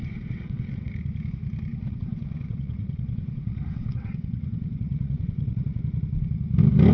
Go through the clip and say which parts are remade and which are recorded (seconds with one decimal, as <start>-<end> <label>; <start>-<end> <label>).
0.0-0.9 remade; 0.9-1.7 recorded; 1.7-5.8 remade; 5.8-6.9 recorded